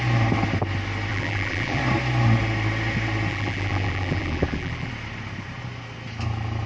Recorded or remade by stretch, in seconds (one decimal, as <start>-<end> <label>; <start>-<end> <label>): 0.0-1.1 recorded; 1.1-1.8 remade; 1.8-3.3 recorded; 3.3-4.9 remade; 4.9-6.7 recorded